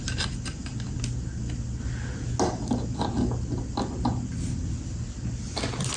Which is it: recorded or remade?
recorded